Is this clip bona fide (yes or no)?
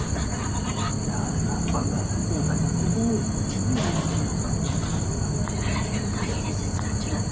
yes